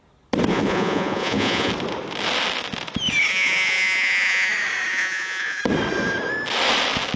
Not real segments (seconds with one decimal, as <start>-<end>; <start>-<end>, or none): 0.5-1.7; 3.3-4.5; 4.9-5.6